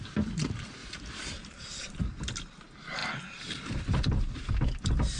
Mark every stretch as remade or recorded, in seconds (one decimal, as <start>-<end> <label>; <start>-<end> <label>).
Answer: 0.0-0.8 recorded; 0.8-2.0 remade; 2.0-5.2 recorded